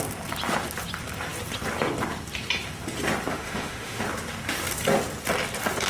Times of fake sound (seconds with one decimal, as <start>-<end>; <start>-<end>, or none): 3.3-4.0

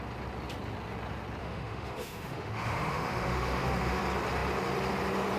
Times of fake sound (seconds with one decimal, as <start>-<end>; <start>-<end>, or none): 1.4-4.0

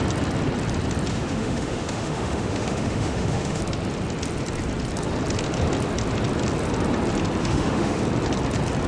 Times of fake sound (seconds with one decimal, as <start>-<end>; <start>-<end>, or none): 1.1-3.6; 7.4-8.0